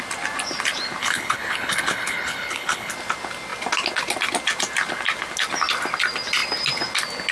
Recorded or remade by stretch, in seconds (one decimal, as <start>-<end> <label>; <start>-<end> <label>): 0.0-1.0 recorded; 1.0-2.9 remade; 2.9-7.3 recorded